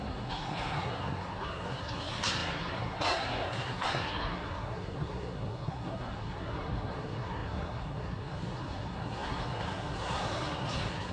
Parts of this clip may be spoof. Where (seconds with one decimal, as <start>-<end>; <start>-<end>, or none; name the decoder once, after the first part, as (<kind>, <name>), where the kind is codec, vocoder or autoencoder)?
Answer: 0.0-11.1 (codec, SNAC)